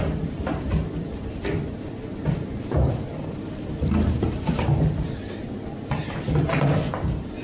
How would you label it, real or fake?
fake